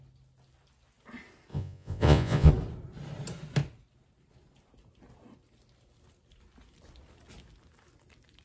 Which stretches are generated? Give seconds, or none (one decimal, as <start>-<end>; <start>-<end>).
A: 1.5-2.5